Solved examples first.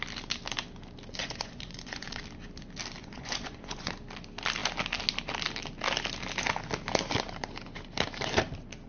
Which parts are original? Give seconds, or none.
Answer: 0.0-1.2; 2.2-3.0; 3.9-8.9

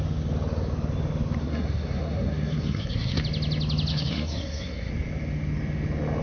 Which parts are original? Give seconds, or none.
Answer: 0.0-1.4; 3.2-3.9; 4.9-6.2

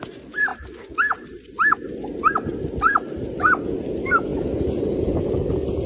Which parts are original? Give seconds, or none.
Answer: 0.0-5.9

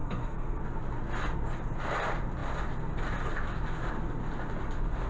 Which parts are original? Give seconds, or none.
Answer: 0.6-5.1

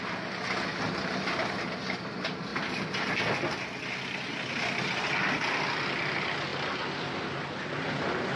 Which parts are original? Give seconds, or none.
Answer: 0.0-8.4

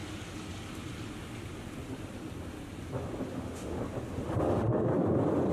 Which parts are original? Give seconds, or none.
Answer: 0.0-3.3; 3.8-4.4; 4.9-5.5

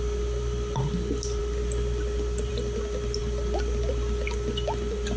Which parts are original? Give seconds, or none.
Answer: 0.0-5.2

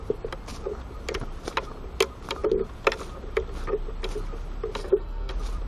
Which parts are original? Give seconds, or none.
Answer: 0.0-4.8; 5.3-5.7